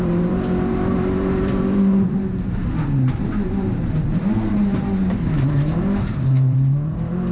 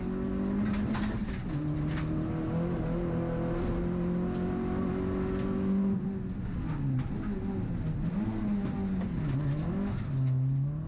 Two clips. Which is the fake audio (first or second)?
first